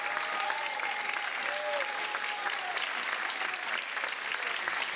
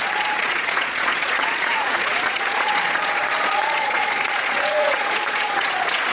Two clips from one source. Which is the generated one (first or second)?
second